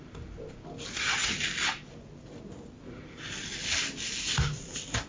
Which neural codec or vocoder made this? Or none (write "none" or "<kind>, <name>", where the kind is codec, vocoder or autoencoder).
none